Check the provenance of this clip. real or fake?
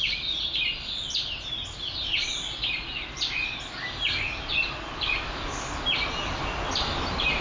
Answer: real